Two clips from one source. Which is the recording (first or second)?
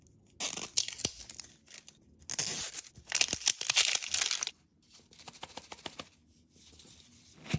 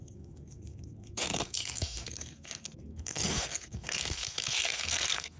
first